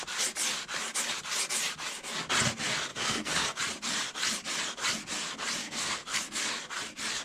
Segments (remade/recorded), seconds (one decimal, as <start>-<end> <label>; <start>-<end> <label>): 0.0-2.9 recorded; 2.9-3.6 remade; 3.6-5.6 recorded; 5.6-6.2 remade; 6.2-7.2 recorded